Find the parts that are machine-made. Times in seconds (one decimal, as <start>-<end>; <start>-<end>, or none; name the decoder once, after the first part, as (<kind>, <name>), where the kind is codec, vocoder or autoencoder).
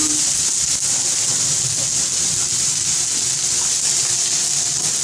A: none